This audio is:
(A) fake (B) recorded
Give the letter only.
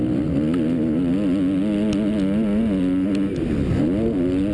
B